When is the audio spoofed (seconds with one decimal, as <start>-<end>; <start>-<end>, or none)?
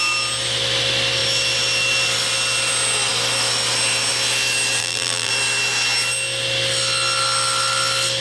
4.8-5.3